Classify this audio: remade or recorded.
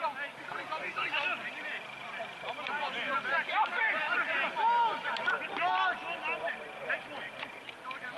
recorded